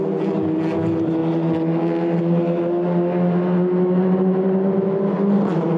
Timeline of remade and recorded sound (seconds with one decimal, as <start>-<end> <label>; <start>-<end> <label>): 0.0-5.8 recorded

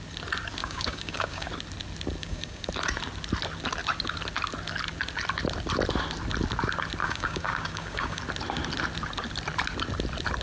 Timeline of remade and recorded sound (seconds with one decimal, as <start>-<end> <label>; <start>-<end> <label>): 0.0-0.6 recorded; 0.6-1.5 remade; 1.5-2.2 recorded; 2.2-2.7 remade; 2.7-7.0 recorded; 7.0-8.2 remade; 8.2-10.4 recorded

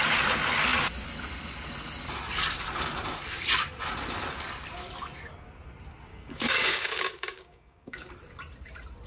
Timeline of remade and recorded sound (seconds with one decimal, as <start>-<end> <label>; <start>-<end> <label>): 0.0-6.1 recorded; 6.1-8.1 remade; 8.1-9.1 recorded

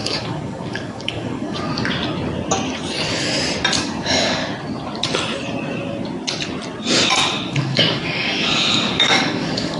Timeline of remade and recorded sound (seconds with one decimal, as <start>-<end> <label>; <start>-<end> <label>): 0.0-1.7 remade; 1.7-3.8 recorded; 3.8-4.4 remade; 4.4-7.5 recorded; 7.5-9.8 remade

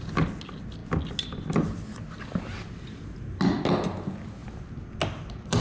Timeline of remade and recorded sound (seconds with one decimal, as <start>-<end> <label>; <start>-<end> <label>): 0.0-5.6 recorded

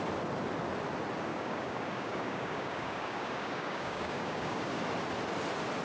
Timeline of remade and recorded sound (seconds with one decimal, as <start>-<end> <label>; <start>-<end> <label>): 0.0-1.3 recorded; 1.3-4.8 remade; 4.8-5.8 recorded